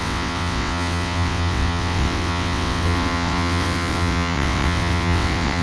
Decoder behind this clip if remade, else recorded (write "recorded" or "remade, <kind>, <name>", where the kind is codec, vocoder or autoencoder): remade, vocoder, WaveNeXt